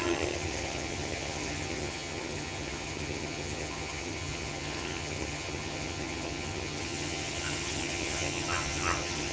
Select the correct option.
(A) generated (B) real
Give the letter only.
A